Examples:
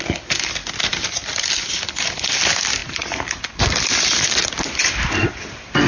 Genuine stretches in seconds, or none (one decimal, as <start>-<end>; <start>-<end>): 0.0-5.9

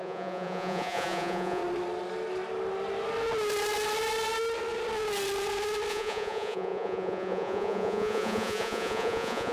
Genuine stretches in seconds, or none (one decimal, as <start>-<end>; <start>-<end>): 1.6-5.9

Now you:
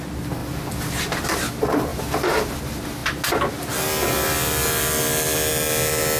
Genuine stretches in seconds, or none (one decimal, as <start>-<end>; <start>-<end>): 0.0-1.9; 2.4-6.2

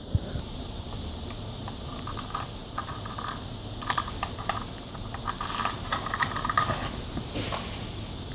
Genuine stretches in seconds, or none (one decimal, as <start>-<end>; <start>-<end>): none